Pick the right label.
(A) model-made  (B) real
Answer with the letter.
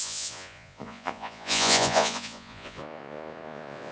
A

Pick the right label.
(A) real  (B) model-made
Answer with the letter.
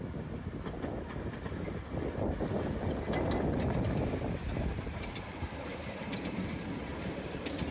A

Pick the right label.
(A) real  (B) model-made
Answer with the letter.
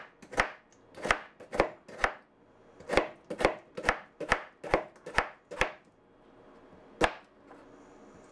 A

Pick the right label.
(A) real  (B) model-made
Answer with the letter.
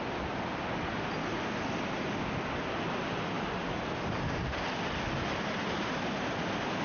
A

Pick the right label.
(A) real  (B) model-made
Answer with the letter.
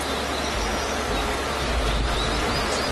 A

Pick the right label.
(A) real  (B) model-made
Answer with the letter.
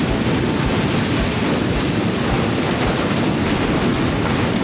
A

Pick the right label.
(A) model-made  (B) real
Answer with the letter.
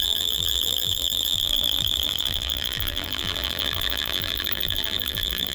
A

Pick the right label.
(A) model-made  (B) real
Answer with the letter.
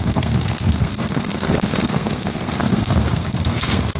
A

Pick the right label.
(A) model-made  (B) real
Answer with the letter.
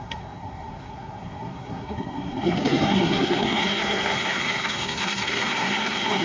A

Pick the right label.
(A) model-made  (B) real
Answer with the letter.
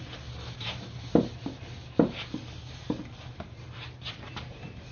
B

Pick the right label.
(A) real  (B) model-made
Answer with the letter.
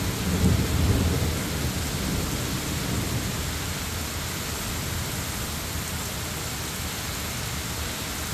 A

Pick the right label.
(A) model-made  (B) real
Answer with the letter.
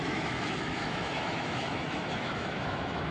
A